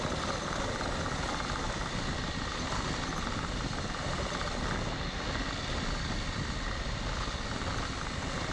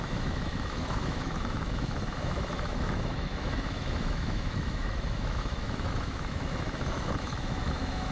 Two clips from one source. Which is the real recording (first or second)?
first